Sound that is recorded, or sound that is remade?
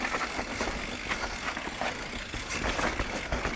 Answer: recorded